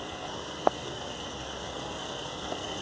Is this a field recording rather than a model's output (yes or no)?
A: no